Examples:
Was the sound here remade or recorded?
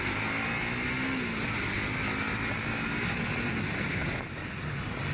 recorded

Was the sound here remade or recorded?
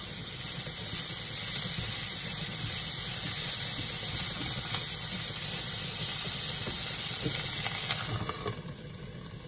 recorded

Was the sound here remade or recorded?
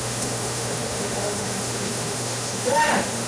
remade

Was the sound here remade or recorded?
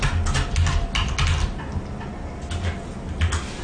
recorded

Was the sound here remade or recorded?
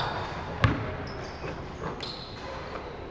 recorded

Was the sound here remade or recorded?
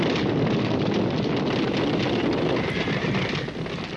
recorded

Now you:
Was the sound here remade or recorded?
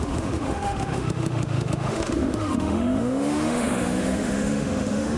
remade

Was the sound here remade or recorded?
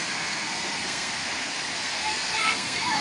remade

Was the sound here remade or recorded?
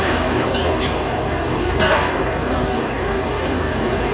remade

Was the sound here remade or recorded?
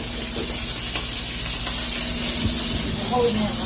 recorded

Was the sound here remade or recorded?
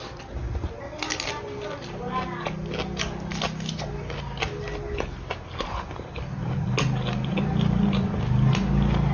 recorded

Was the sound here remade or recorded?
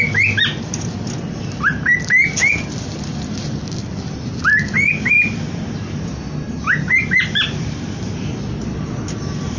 recorded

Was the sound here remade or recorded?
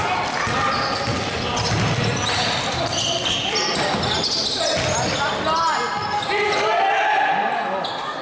recorded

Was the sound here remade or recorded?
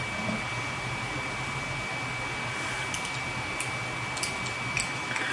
recorded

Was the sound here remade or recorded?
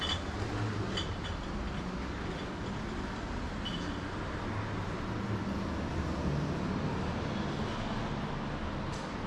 recorded